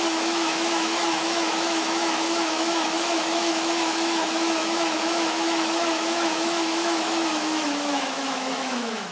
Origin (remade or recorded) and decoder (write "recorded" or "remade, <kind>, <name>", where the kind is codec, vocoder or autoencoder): remade, autoencoder, DAC-VAE